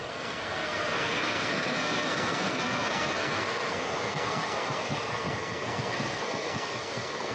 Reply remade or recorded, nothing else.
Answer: remade